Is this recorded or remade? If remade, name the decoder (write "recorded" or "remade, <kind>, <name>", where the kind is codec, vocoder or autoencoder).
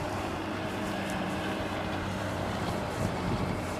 remade, vocoder, BigVGAN v2